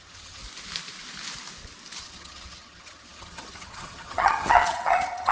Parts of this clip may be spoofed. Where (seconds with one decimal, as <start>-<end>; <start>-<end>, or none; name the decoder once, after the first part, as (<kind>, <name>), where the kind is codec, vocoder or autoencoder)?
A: 0.0-0.4 (vocoder, HiFi-GAN); 2.0-5.3